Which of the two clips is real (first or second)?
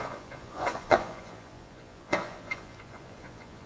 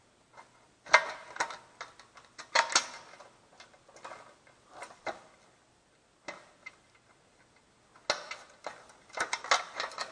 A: second